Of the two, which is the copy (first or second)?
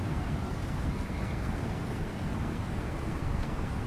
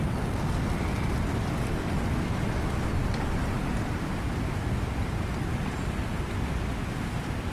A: first